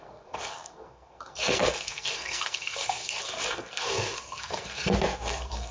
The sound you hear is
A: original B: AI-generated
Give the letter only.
B